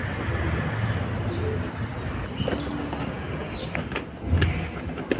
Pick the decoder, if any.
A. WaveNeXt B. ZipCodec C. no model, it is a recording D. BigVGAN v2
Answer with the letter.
C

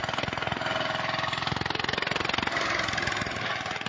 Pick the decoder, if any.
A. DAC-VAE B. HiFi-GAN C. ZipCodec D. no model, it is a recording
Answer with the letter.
D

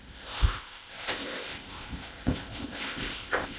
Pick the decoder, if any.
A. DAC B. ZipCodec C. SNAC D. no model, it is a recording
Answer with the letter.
B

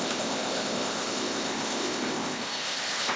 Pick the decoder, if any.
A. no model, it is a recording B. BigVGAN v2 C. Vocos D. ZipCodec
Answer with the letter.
D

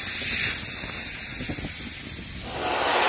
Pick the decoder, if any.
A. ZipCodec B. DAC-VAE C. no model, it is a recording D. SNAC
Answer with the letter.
C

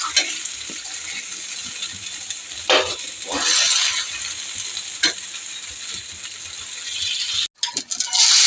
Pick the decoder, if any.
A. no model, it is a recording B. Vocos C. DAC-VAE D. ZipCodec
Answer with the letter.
A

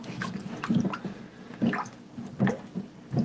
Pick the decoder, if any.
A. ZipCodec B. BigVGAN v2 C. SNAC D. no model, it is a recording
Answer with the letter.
D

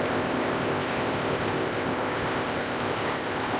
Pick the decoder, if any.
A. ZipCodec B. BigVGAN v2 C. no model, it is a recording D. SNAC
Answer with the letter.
A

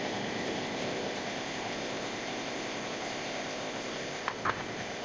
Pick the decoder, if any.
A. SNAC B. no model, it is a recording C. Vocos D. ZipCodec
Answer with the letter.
D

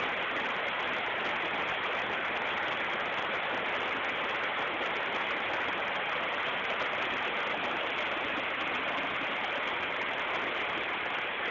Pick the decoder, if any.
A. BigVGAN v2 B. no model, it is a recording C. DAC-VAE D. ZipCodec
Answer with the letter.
B